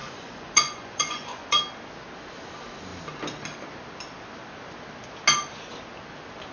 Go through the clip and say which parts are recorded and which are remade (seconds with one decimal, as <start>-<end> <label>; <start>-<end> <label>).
0.0-1.6 remade; 1.6-6.5 recorded